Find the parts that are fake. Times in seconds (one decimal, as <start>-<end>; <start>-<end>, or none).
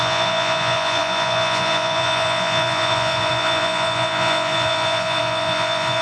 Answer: 0.0-6.0